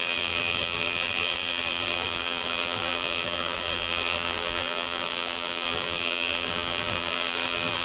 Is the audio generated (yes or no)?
yes